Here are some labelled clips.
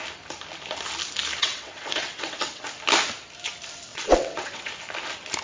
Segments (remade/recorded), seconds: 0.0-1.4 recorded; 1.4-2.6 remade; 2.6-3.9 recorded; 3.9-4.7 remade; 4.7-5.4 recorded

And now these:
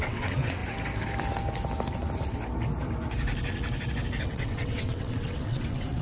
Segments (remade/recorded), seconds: 0.0-0.6 remade; 0.6-4.2 recorded; 4.2-6.0 remade

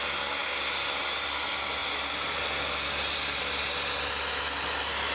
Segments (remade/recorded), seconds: 0.0-5.1 recorded